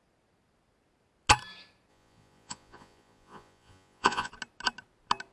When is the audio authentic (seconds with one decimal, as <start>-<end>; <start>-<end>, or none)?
0.0-1.9; 4.3-5.3